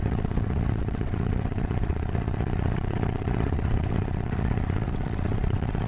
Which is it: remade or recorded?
remade